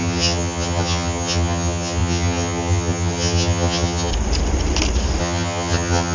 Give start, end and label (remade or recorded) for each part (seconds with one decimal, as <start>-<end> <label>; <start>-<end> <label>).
0.0-4.1 remade; 4.1-5.2 recorded; 5.2-6.1 remade